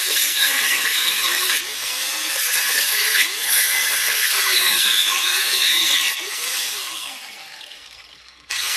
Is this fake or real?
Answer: fake